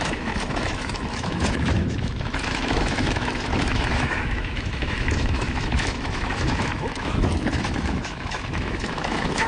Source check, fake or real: fake